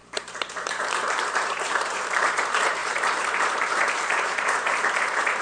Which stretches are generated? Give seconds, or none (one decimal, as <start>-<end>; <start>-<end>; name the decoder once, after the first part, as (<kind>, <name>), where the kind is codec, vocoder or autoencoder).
0.0-5.4 (vocoder, BigVGAN v2)